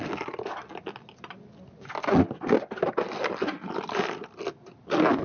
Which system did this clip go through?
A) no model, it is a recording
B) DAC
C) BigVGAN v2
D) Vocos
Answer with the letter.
A